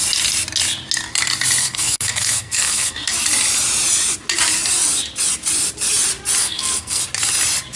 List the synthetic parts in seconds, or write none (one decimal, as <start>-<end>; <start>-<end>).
1.6-3.1; 6.4-7.0